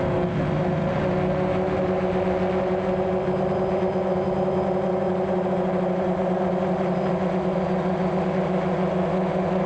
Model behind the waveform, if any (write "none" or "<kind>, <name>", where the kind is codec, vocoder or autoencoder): none